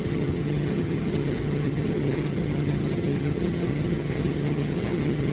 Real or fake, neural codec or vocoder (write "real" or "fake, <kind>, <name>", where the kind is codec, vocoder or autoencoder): fake, vocoder, HiFi-GAN